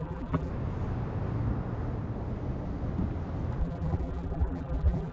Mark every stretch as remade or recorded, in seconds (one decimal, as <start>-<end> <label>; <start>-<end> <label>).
0.0-0.5 remade; 0.5-3.6 recorded; 3.6-5.1 remade